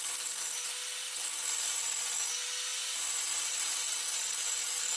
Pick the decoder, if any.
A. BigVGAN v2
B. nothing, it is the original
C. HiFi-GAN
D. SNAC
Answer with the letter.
B